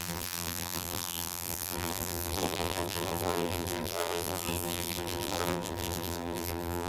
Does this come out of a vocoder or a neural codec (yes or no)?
yes